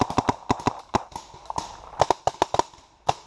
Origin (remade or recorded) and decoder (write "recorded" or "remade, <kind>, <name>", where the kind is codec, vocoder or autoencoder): recorded